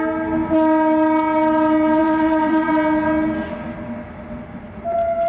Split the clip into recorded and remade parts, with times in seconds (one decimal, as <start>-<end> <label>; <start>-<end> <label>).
0.0-2.0 recorded; 2.0-2.7 remade; 2.7-5.3 recorded